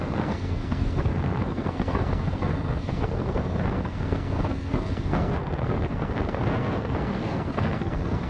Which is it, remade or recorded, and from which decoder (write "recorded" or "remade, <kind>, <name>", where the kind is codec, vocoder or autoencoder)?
remade, codec, SNAC